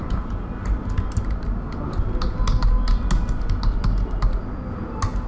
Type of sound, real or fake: real